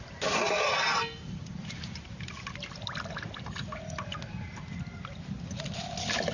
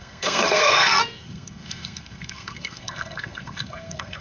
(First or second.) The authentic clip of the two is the first